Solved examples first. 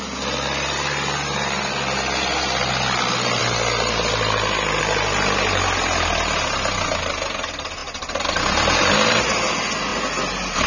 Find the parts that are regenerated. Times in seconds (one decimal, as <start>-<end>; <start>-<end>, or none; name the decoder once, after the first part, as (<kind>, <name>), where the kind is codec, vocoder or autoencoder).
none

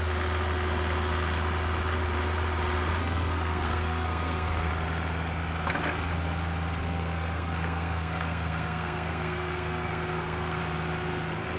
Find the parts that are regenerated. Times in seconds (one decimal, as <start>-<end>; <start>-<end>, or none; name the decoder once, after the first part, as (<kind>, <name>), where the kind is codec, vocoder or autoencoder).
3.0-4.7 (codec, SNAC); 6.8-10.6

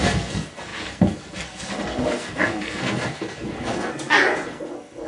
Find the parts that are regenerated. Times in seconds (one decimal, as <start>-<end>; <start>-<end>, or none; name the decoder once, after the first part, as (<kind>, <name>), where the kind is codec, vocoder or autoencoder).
0.0-5.1 (codec, SNAC)